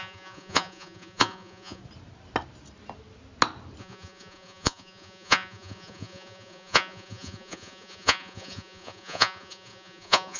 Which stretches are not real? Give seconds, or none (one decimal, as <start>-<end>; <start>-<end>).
0.0-1.8; 3.8-10.4